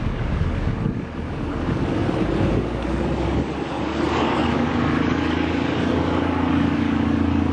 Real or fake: fake